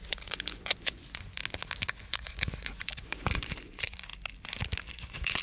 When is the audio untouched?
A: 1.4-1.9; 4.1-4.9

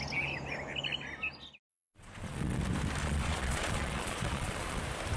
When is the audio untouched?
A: 0.0-1.7; 2.6-3.0; 4.8-5.2

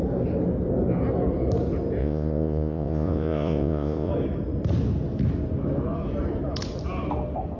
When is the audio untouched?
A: 0.0-2.0; 4.1-7.6

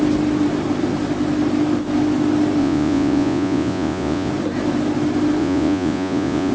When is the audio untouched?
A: 0.0-2.6; 4.3-5.4

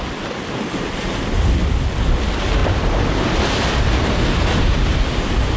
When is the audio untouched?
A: 0.0-5.6

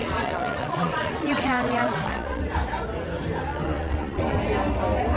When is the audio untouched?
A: 2.4-3.5; 4.4-5.2

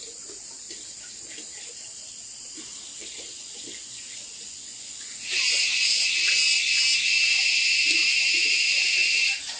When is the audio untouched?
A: 0.0-2.9; 6.8-9.6